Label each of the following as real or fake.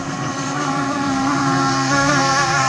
fake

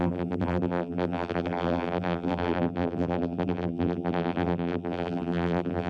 fake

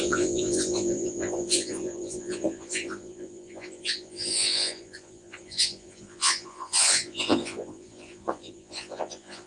fake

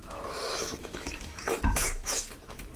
fake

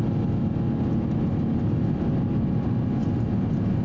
real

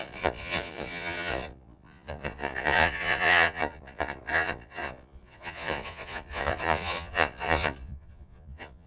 fake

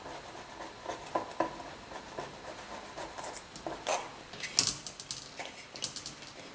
real